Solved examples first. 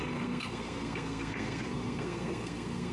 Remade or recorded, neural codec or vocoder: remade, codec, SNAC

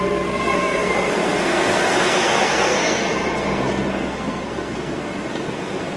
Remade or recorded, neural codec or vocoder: remade, codec, SNAC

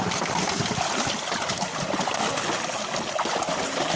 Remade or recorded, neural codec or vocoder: recorded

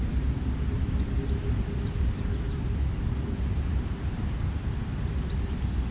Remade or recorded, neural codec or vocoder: recorded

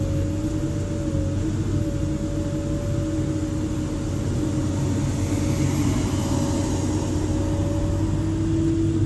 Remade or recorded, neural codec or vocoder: recorded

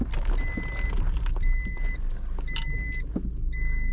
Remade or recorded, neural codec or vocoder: recorded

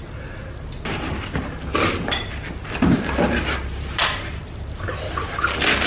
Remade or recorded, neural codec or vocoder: recorded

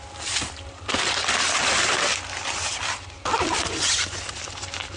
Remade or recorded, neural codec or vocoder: recorded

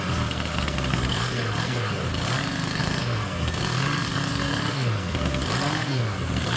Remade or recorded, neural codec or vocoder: remade, codec, SNAC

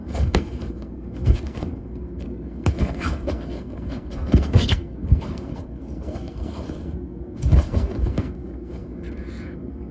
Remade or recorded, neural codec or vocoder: remade, codec, SNAC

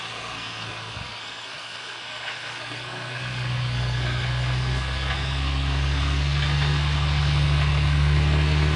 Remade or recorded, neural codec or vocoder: remade, codec, SNAC